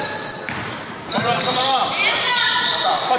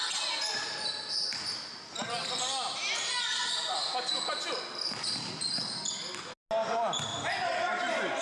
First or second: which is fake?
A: first